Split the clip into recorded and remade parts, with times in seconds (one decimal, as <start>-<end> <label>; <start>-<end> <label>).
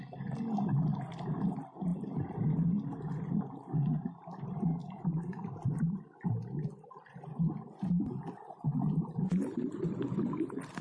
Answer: 0.0-10.8 recorded